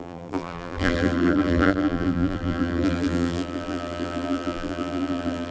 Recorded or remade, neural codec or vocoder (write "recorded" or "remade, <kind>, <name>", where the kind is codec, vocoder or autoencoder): remade, vocoder, BigVGAN v2